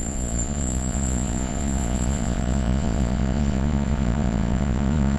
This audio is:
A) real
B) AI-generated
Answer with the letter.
B